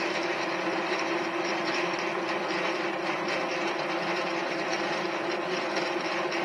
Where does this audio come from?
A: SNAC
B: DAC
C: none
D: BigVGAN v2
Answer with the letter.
D